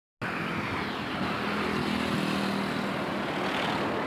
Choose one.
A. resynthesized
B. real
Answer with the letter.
B